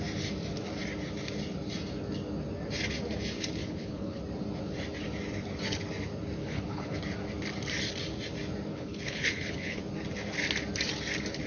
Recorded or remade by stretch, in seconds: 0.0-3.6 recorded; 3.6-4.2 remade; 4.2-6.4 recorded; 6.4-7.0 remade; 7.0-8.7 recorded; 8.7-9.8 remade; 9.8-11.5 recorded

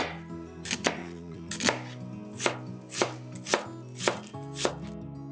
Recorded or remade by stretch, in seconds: 0.0-1.0 recorded; 1.0-1.5 remade; 1.5-5.3 recorded

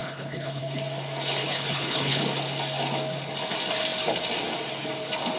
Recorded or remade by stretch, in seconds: 0.0-0.6 remade; 0.6-1.4 recorded; 1.4-2.2 remade; 2.2-5.4 recorded